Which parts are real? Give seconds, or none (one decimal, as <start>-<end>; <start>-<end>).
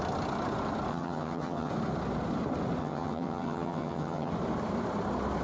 0.0-0.9; 1.7-2.8; 4.3-5.4